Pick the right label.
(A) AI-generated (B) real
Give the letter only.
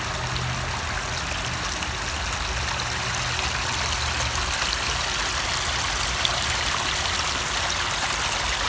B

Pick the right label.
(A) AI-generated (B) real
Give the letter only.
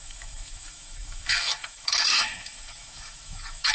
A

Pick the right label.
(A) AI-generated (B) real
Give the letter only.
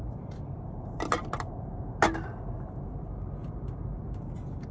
B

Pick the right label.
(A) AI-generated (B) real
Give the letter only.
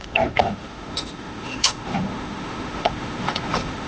A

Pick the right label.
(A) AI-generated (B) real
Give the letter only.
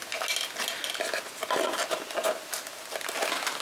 B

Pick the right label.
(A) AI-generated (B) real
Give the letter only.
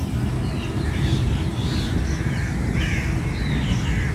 B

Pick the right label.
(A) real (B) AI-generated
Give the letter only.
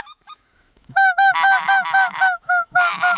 B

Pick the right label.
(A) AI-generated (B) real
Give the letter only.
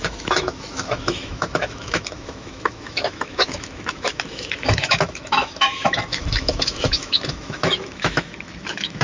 A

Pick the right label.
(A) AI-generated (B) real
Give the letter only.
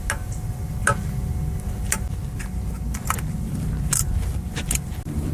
B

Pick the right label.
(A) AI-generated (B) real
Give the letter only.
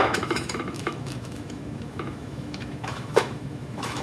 A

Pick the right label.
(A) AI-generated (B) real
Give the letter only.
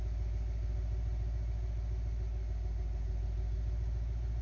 B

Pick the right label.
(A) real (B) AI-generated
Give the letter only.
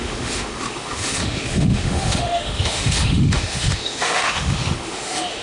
B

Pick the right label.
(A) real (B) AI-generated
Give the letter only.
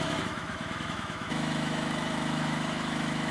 B